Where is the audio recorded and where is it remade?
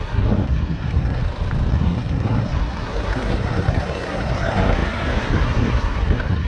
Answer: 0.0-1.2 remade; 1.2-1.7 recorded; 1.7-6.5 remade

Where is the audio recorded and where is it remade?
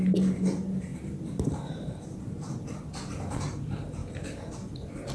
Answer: 0.0-0.9 recorded; 0.9-2.7 remade; 2.7-5.1 recorded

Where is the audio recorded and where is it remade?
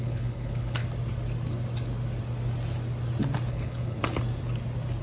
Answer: 0.0-0.8 remade; 0.8-3.5 recorded; 3.5-4.0 remade; 4.0-5.0 recorded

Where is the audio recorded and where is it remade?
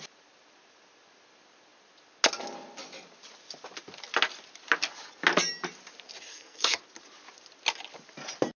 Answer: 0.0-6.3 recorded; 6.3-6.8 remade; 6.8-8.5 recorded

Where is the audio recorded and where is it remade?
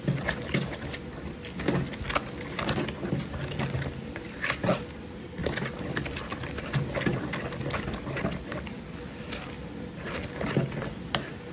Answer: 0.0-5.4 recorded; 5.4-8.8 remade; 8.8-11.5 recorded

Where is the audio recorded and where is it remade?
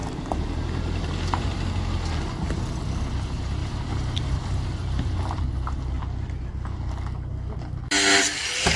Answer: 0.0-1.7 remade; 1.7-3.6 recorded; 3.6-5.4 remade; 5.4-8.8 recorded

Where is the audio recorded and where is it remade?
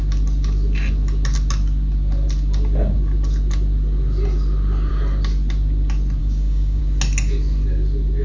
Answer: 0.0-6.2 recorded; 6.2-6.8 remade; 6.8-8.2 recorded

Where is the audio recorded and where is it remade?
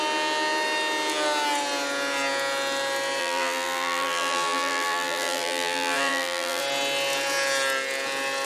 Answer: 0.0-3.2 recorded; 3.2-6.6 remade; 6.6-8.5 recorded